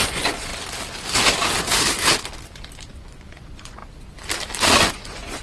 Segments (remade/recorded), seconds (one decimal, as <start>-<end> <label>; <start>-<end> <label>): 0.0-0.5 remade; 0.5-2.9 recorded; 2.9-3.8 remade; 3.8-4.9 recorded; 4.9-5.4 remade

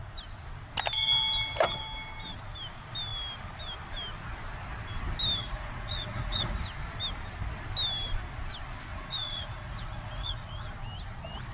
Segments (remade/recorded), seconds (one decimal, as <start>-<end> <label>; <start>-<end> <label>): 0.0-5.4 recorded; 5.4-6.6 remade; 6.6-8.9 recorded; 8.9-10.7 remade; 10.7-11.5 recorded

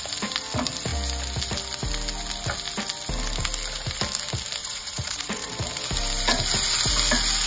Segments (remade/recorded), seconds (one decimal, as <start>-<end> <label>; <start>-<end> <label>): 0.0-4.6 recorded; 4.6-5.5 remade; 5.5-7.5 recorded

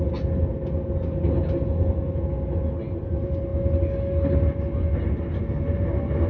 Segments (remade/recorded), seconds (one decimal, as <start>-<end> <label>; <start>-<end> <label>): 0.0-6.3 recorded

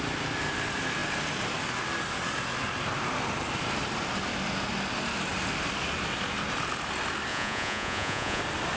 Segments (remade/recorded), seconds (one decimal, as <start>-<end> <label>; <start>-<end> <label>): 0.0-7.3 recorded; 7.3-8.4 remade; 8.4-8.8 recorded

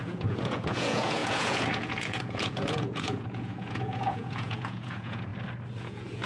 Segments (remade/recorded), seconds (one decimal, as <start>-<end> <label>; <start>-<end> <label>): 0.0-5.3 remade; 5.3-5.8 recorded; 5.8-6.3 remade